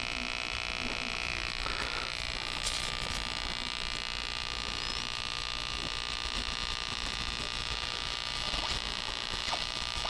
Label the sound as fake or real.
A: real